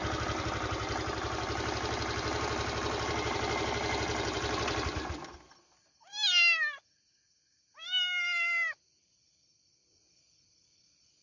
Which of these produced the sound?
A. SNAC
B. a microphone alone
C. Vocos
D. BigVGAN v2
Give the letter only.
B